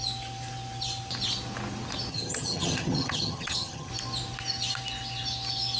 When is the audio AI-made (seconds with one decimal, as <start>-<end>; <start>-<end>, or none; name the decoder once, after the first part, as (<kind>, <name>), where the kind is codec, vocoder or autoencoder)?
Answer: 2.1-3.9 (vocoder, HiFi-GAN)